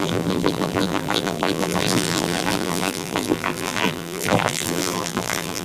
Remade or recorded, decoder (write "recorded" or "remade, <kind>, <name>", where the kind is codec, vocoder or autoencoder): remade, vocoder, BigVGAN v2